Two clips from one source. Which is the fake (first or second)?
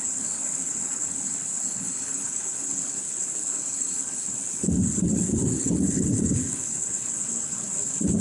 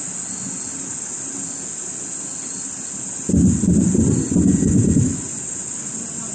first